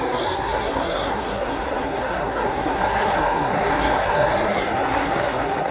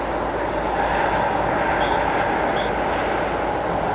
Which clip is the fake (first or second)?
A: first